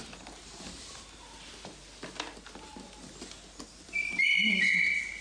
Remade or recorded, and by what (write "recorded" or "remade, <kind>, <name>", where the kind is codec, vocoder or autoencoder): recorded